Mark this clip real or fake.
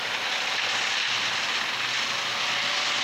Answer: real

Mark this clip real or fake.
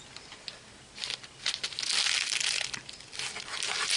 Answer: real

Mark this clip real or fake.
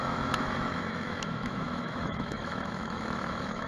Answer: fake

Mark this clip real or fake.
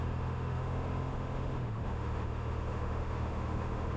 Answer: fake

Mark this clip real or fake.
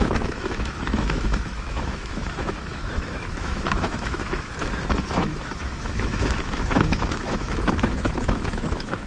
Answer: fake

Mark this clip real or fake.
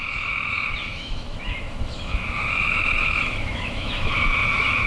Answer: fake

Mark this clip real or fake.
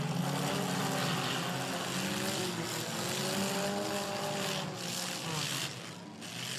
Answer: real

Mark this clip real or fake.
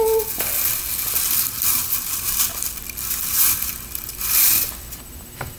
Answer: real